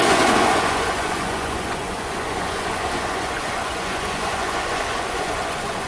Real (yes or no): no